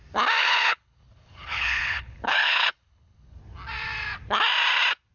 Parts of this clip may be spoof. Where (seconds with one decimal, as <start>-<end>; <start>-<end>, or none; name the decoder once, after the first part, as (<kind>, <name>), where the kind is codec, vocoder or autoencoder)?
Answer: 0.4-3.4 (codec, HILCodec)

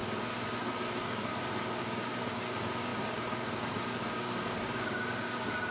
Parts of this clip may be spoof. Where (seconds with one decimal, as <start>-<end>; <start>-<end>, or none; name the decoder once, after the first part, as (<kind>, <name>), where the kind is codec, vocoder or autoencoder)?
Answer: 0.6-1.3 (codec, DAC); 1.8-5.7

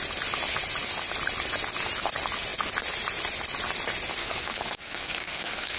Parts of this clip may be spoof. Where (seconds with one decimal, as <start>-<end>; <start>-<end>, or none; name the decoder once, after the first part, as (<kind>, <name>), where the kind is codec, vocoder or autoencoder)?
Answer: 4.2-5.8 (codec, DAC)

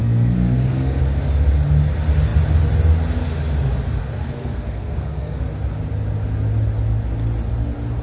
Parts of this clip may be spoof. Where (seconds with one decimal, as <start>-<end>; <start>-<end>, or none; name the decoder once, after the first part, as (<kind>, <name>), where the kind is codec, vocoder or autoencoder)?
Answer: 0.0-1.0 (codec, SNAC); 4.0-5.4

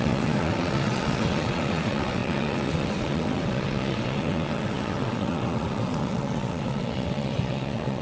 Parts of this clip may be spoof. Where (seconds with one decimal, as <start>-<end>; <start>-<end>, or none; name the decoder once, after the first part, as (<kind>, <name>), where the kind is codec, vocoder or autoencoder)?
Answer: 0.0-8.0 (vocoder, WaveNeXt)

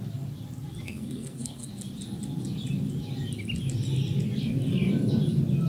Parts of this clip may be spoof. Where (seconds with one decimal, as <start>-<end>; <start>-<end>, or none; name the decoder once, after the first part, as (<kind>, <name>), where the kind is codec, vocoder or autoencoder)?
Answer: 0.8-1.7 (codec, SNAC)

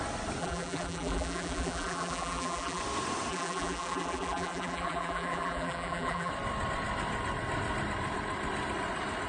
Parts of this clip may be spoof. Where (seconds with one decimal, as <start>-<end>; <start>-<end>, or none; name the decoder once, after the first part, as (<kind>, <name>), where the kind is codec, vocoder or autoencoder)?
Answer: 0.4-2.8 (vocoder, BigVGAN v2); 3.3-6.3